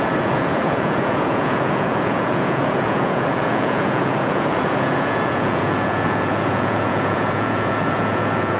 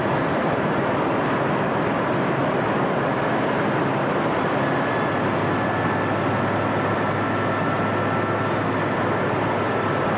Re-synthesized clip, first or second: first